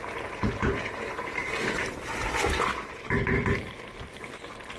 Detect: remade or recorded remade